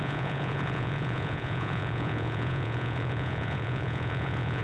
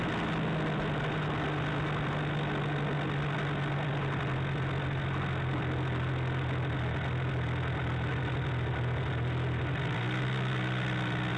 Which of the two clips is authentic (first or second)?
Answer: second